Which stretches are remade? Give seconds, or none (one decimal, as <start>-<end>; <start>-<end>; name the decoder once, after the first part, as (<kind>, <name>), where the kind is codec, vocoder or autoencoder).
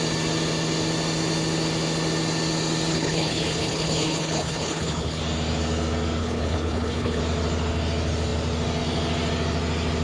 2.9-5.2 (codec, HILCodec); 6.2-7.2